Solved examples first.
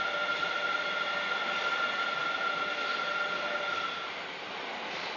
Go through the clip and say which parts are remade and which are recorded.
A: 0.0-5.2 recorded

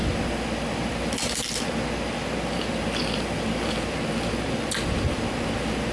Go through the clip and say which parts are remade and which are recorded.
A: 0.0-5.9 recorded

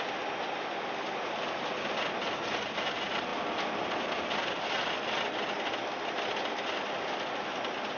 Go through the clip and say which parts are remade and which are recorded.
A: 0.0-8.0 recorded